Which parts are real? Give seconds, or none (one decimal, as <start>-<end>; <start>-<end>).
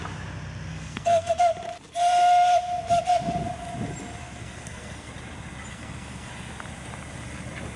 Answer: 0.0-0.7; 1.4-4.2; 5.1-5.7; 6.3-7.8